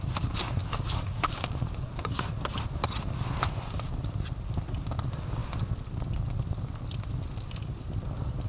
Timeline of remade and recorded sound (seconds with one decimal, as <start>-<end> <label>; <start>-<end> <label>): 0.0-0.6 recorded; 0.6-2.3 remade; 2.3-8.5 recorded